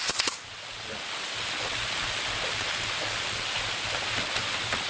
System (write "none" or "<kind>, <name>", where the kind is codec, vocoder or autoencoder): none